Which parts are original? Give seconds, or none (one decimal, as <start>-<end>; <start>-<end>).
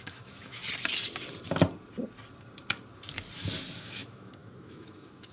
0.6-3.8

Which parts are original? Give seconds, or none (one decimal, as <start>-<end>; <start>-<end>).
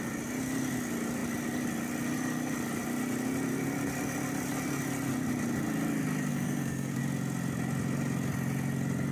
0.0-6.3; 7.0-9.1